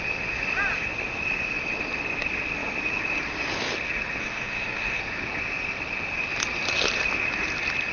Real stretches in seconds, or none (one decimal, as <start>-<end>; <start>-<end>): 0.0-4.2; 5.0-7.9

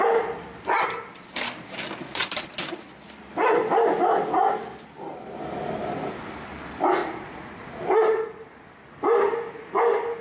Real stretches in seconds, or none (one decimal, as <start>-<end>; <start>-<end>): 0.0-7.0; 7.8-10.2

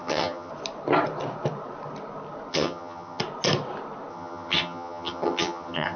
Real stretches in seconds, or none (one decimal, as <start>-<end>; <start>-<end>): 0.5-2.5; 3.2-4.1

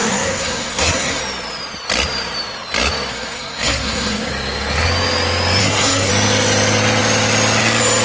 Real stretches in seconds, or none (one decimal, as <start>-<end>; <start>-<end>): 1.2-3.1; 4.3-5.6; 6.1-8.0

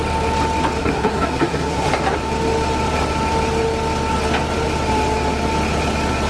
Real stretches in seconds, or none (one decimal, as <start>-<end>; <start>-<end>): 0.0-0.8; 1.9-6.3

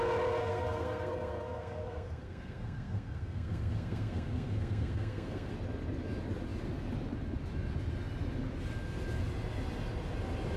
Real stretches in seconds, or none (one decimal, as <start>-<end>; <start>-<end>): 0.0-0.4; 5.5-10.6